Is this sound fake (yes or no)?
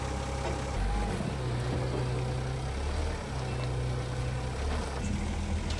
no